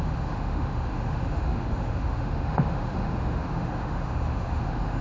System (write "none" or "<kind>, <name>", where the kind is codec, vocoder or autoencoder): autoencoder, DAC-VAE